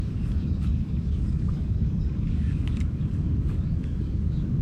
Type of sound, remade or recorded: remade